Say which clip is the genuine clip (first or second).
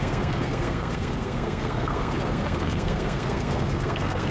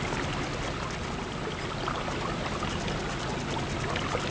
second